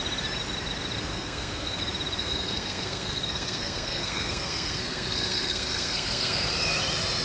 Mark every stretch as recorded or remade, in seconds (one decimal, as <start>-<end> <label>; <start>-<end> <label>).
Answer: 0.0-1.1 recorded; 1.1-1.8 remade; 1.8-2.2 recorded; 2.2-6.5 remade; 6.5-7.2 recorded